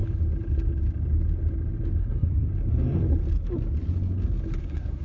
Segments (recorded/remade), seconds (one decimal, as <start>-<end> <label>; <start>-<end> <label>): 0.0-2.0 recorded; 2.0-2.5 remade; 2.5-4.6 recorded; 4.6-5.0 remade